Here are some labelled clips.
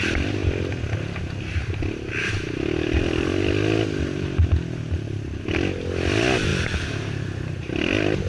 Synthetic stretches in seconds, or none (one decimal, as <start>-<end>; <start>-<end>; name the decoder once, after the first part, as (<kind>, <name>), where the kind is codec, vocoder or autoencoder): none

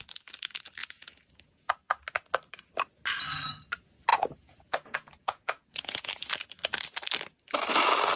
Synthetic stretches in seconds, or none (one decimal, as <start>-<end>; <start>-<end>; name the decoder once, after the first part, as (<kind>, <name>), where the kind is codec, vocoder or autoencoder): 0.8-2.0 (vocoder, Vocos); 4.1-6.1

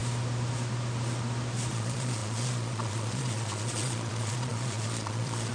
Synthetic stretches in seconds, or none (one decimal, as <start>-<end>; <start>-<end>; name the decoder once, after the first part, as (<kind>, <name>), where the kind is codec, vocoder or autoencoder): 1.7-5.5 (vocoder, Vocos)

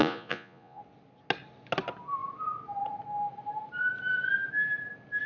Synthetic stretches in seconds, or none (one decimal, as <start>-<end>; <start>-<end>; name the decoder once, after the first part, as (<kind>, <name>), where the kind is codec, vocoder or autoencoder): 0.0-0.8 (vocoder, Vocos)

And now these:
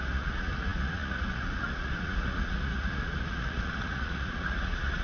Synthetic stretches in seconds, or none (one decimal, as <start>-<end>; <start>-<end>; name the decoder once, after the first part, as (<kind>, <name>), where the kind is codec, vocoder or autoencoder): 0.0-5.0 (vocoder, Vocos)

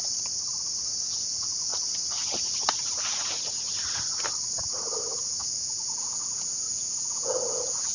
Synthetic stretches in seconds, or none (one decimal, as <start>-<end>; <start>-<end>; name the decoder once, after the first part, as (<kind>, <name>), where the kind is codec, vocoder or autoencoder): 1.0-1.7 (vocoder, Vocos); 5.4-7.9

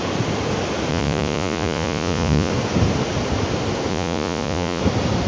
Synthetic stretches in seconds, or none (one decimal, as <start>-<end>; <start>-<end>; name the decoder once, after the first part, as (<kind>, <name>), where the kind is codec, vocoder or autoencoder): 0.9-2.5 (vocoder, Vocos); 3.9-4.8